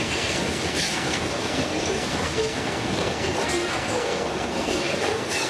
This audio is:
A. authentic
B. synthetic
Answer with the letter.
B